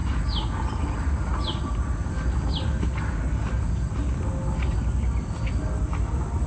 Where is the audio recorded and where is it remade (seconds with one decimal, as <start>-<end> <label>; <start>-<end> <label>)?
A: 0.0-6.5 recorded